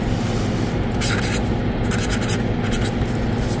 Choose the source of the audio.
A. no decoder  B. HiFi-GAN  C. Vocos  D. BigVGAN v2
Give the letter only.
A